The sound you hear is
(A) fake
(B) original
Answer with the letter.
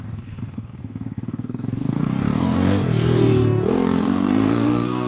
A